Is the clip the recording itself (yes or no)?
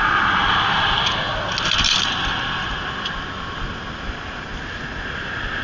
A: yes